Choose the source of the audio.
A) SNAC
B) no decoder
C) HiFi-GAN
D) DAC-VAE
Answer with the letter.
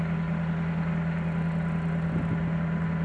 B